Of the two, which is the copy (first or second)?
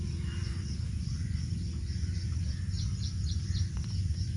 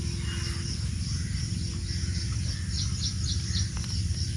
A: first